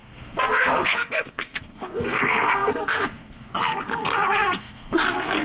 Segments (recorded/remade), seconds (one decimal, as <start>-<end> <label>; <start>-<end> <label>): 0.0-5.4 remade